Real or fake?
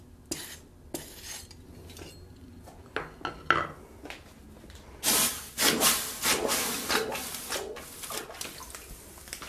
real